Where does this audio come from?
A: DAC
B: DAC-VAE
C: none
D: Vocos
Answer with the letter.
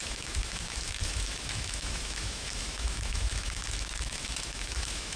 B